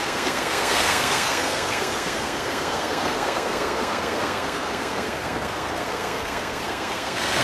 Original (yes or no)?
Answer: no